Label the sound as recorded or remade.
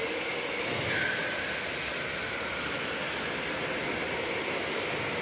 recorded